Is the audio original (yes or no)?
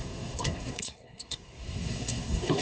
no